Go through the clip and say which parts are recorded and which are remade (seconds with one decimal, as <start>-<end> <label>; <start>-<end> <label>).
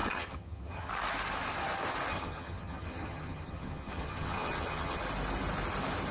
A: 0.0-0.9 remade; 0.9-2.1 recorded; 2.1-5.0 remade; 5.0-6.1 recorded